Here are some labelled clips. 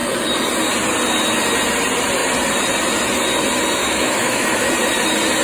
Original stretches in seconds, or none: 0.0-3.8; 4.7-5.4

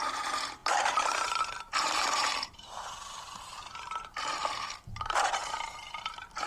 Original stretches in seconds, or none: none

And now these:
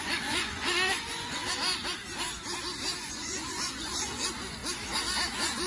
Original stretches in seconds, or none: 1.4-3.0; 4.6-5.3

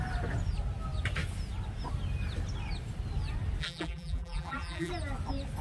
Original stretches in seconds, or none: 0.0-3.6; 4.9-5.6